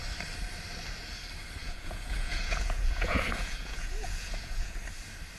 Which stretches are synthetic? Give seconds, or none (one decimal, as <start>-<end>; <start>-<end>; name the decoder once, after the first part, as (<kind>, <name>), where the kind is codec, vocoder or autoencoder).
1.6-4.8 (vocoder, Vocos)